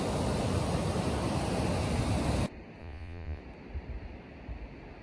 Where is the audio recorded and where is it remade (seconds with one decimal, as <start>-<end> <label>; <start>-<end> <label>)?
0.0-2.8 recorded; 2.8-3.4 remade; 3.4-5.0 recorded